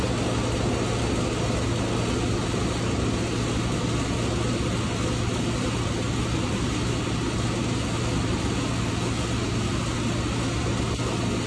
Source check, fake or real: real